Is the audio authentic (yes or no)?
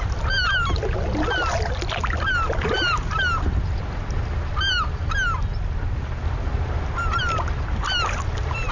yes